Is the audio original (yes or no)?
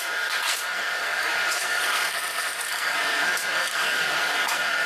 no